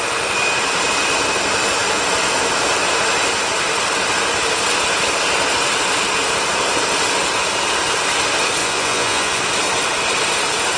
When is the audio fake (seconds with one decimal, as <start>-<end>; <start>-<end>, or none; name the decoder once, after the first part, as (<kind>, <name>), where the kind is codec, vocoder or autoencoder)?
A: 8.6-9.4 (vocoder, Vocos)